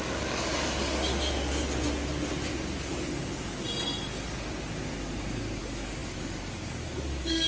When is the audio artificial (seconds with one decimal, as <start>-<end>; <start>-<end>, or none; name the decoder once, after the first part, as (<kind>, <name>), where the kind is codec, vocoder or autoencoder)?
0.0-1.1 (codec, DAC); 5.6-7.5